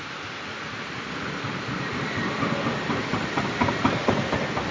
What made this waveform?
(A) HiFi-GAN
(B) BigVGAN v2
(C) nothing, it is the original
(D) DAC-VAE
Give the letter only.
C